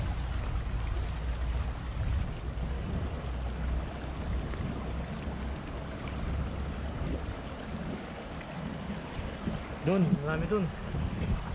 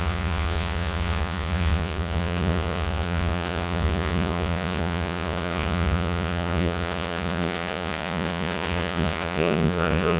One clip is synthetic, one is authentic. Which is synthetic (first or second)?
second